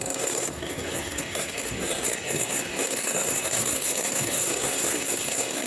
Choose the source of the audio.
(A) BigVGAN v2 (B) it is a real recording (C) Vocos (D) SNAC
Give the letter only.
D